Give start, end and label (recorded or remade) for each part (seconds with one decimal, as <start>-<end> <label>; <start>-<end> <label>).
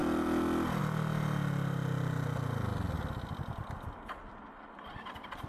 0.0-5.5 recorded